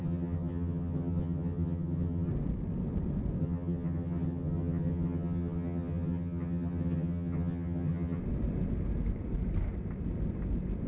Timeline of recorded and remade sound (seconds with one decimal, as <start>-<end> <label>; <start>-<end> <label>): 0.0-2.3 remade; 2.3-3.4 recorded; 3.4-8.2 remade; 8.2-10.9 recorded